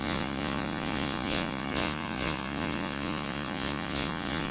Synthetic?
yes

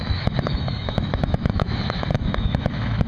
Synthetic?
yes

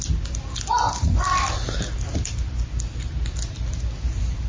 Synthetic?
no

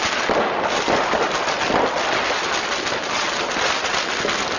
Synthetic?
no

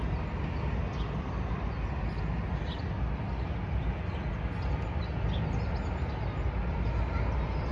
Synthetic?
no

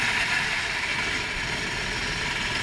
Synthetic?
no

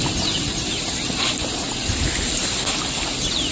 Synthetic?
no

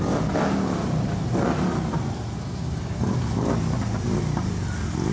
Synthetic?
no